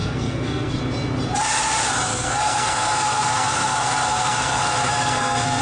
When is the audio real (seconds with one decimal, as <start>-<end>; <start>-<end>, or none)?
0.8-2.1